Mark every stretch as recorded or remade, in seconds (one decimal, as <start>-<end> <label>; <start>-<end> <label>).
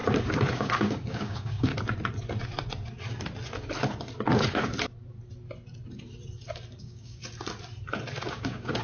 0.0-0.5 recorded; 0.5-1.7 remade; 1.7-6.8 recorded; 6.8-7.2 remade; 7.2-8.3 recorded; 8.3-8.8 remade